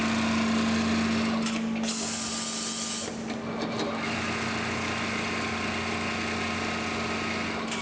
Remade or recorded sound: recorded